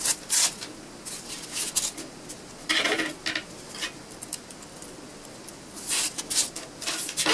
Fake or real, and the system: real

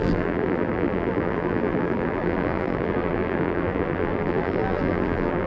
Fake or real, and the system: fake, vocoder, BigVGAN v2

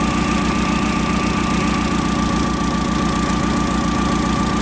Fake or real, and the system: real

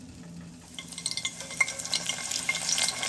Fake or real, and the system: real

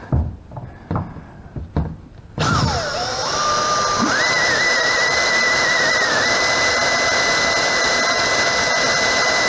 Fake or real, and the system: fake, vocoder, BigVGAN v2